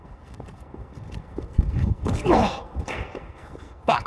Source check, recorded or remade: remade